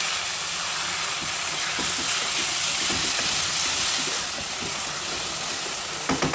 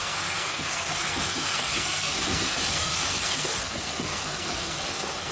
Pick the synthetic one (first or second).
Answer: second